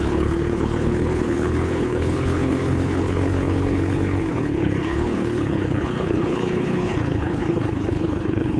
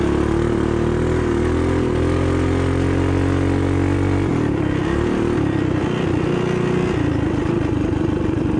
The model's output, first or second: first